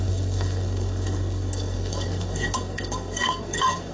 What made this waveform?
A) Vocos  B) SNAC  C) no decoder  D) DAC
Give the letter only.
B